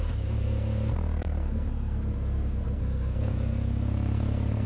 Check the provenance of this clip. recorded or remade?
remade